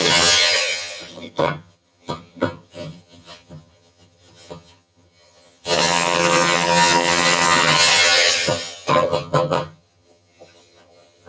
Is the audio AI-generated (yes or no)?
yes